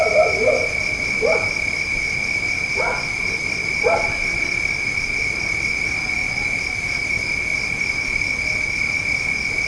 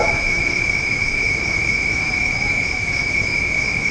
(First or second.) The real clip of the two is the first